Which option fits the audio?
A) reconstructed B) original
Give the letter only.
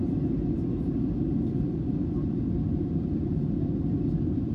B